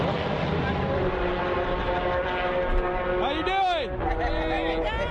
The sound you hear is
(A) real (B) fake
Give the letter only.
A